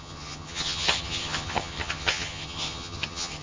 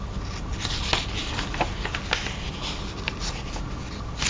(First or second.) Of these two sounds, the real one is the second